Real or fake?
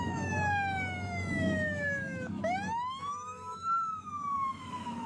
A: fake